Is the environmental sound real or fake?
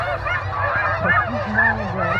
real